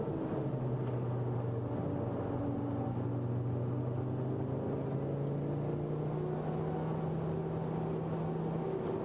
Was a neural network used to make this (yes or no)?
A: no